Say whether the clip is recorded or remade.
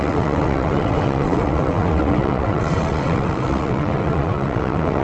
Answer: remade